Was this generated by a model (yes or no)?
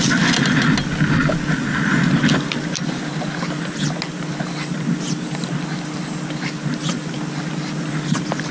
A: no